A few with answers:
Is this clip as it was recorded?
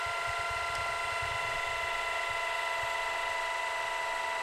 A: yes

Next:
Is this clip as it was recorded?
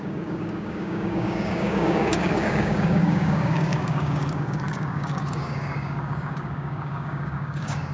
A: no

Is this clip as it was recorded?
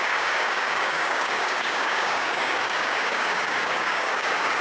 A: no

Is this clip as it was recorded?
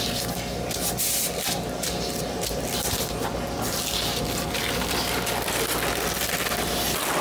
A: yes